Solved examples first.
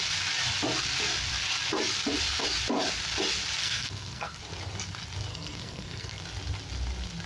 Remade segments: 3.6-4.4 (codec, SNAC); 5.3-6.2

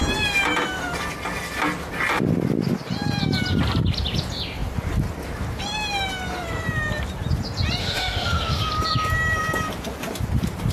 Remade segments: 7.8-8.7 (autoencoder, DAC-VAE)

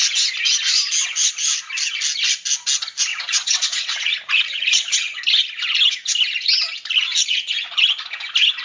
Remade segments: 3.1-5.2 (vocoder, Vocos); 7.2-7.8

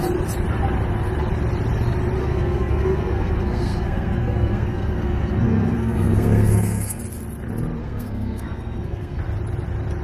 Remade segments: 2.2-7.0 (codec, SNAC); 7.8-9.2

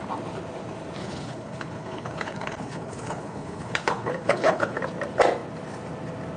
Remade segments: 1.0-4.8 (codec, HILCodec)